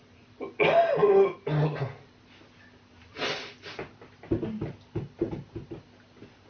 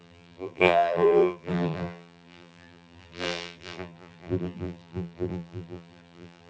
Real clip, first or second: first